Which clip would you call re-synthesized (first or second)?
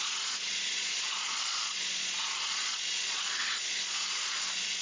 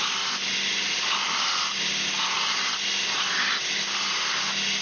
first